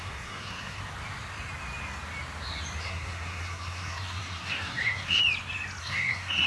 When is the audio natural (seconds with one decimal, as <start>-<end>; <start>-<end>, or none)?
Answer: 0.8-2.8; 5.2-5.8